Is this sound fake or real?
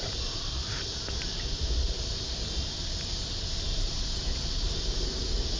real